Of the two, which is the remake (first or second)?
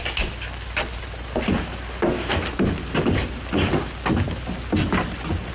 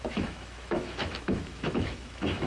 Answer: second